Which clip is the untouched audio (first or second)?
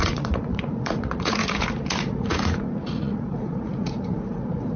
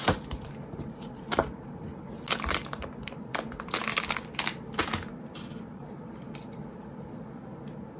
second